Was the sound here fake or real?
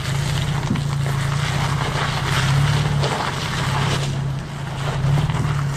real